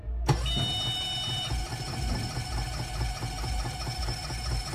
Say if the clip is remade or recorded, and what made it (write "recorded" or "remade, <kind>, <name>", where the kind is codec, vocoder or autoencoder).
recorded